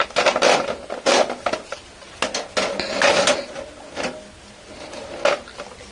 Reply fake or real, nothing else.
real